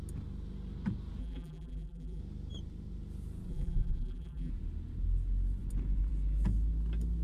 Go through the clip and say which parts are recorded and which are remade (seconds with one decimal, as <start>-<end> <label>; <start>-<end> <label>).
0.0-1.2 recorded; 1.2-2.2 remade; 2.2-3.5 recorded; 3.5-4.5 remade; 4.5-7.2 recorded